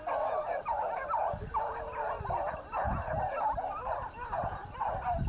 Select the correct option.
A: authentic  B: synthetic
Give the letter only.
A